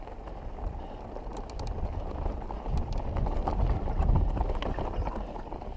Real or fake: real